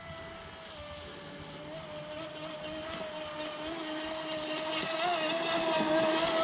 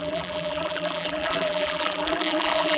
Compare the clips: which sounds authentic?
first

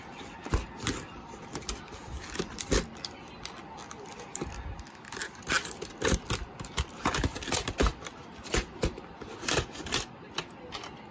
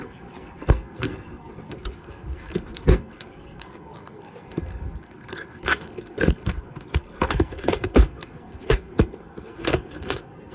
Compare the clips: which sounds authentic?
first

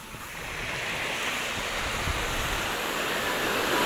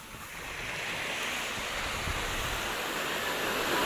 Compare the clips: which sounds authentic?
second